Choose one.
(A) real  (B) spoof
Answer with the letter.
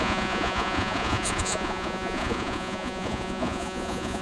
B